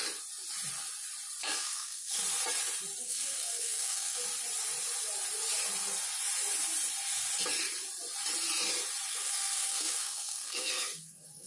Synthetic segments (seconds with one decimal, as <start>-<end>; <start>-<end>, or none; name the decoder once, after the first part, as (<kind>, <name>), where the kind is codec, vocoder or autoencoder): 1.4-2.2 (codec, SNAC); 3.0-4.2; 9.1-11.5